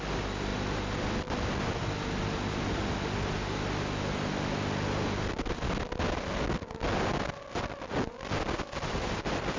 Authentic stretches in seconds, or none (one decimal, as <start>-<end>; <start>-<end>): 0.0-9.6